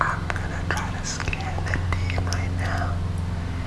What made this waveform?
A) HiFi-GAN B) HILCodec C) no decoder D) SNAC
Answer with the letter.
C